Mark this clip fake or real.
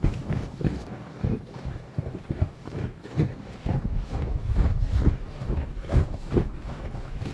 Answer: fake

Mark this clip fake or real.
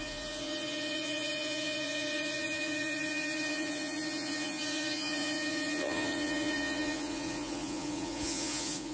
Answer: fake